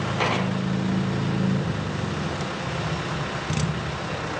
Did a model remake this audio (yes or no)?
no